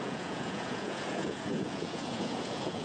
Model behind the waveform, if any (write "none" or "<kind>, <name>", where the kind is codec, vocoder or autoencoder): vocoder, Vocos